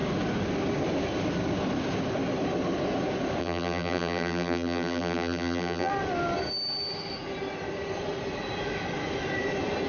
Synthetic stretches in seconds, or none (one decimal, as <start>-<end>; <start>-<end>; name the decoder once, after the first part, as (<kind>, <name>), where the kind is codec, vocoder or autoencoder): 3.4-5.9 (vocoder, BigVGAN v2)